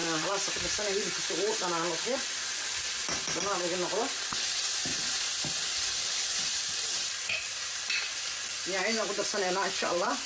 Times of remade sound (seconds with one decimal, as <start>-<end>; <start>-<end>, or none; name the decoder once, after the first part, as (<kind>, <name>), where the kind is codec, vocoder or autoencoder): 0.0-1.5 (vocoder, BigVGAN v2); 4.9-10.3